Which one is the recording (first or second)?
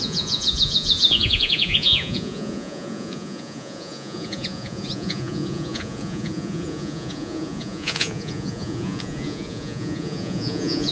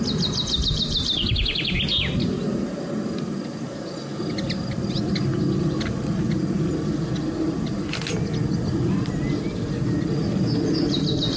second